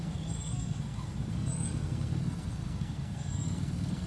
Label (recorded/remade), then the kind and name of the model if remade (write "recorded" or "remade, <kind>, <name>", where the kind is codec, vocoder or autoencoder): remade, codec, SNAC